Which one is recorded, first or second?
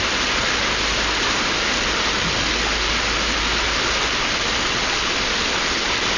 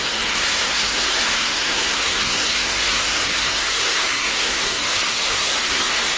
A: first